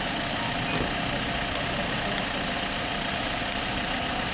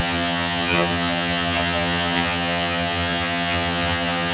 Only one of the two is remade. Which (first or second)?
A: second